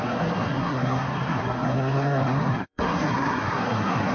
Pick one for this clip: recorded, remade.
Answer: remade